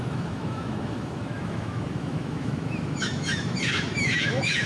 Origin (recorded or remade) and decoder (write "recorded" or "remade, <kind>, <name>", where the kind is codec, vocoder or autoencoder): remade, autoencoder, DAC-VAE